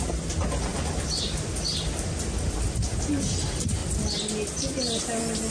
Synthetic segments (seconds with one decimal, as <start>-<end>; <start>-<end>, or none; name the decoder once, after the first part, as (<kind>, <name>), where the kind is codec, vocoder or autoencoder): none